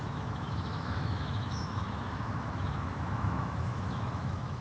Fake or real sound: fake